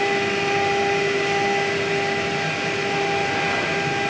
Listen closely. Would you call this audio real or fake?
real